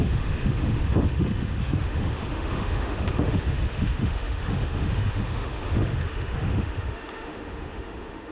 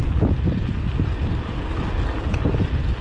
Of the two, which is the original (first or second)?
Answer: second